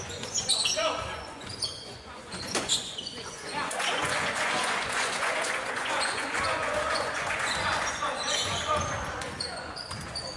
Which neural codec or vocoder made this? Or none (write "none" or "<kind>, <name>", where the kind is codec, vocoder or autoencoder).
vocoder, Vocos